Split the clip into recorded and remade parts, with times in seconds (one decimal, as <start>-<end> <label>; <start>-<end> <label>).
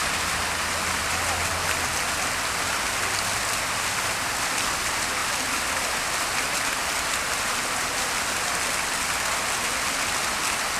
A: 0.0-10.8 recorded